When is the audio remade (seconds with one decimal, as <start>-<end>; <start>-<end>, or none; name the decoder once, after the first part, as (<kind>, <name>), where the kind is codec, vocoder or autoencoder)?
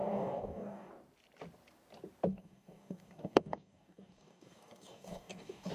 0.0-0.9 (codec, DAC); 2.3-5.7